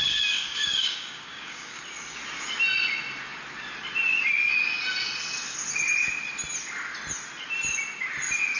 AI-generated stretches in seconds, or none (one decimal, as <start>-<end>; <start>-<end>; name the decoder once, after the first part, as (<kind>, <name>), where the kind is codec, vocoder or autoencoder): 0.0-1.8 (codec, DAC)